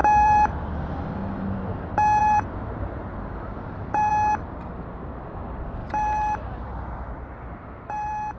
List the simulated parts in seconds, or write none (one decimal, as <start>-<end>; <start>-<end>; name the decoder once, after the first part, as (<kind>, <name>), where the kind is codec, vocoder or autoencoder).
0.0-0.7 (vocoder, BigVGAN v2); 2.2-4.1; 5.8-8.4

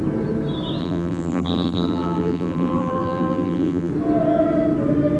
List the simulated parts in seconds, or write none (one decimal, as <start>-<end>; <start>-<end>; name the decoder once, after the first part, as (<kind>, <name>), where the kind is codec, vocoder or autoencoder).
0.8-3.9 (vocoder, BigVGAN v2)

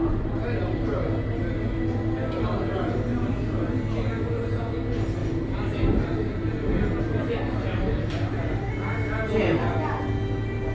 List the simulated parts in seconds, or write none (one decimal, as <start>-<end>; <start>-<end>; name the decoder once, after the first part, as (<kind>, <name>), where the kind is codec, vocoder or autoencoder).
3.1-3.7 (vocoder, BigVGAN v2); 5.2-7.2; 7.9-8.7

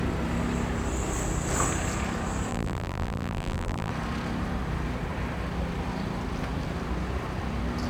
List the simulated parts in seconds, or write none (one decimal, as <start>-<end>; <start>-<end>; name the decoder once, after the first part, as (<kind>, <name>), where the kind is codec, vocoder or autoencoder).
2.5-3.9 (vocoder, BigVGAN v2)

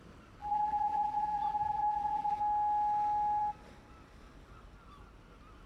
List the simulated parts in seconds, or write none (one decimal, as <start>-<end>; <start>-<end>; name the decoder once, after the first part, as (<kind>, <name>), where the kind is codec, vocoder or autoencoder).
0.4-2.4 (vocoder, BigVGAN v2)

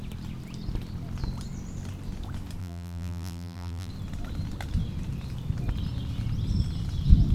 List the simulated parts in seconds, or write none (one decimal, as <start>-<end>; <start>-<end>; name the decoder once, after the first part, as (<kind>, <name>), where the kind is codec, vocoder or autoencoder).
2.6-3.9 (vocoder, BigVGAN v2)

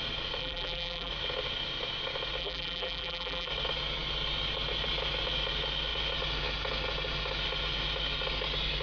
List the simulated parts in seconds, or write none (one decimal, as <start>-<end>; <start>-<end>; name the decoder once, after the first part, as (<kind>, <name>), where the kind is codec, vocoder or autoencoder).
0.4-1.1 (vocoder, BigVGAN v2); 2.4-3.5

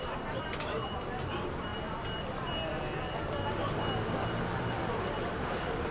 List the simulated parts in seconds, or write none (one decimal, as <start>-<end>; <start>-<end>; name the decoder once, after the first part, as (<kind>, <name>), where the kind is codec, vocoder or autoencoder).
0.0-1.7 (vocoder, BigVGAN v2); 4.4-5.9